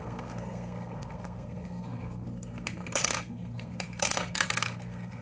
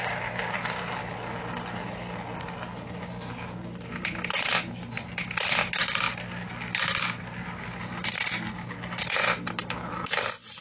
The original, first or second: second